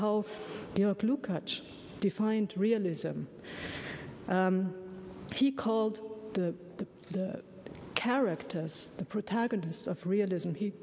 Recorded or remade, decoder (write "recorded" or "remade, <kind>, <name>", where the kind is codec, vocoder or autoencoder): recorded